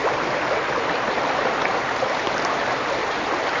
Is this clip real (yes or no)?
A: yes